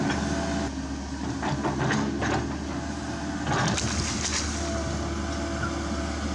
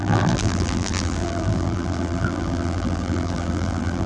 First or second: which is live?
first